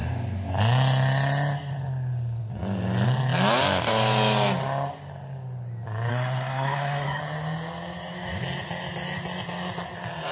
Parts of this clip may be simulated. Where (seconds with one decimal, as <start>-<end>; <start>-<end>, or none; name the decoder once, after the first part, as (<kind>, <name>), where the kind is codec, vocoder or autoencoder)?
6.1-7.2 (codec, SNAC)